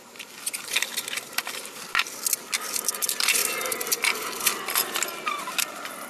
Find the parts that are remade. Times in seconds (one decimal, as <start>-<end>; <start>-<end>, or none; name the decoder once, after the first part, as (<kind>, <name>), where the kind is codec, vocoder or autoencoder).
none